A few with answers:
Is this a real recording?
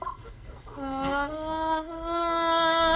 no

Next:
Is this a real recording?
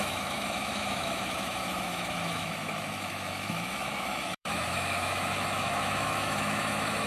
no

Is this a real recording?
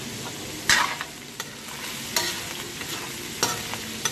yes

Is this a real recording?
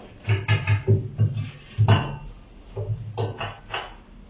yes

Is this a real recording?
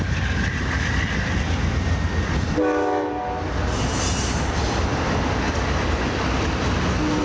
yes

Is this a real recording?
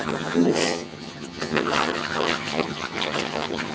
no